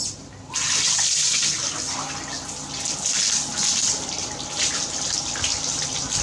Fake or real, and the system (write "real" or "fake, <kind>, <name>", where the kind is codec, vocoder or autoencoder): real